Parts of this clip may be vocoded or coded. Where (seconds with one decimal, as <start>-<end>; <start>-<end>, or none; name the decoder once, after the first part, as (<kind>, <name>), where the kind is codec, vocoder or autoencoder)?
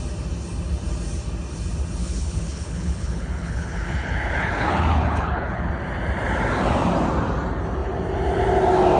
2.0-5.7 (codec, HILCodec)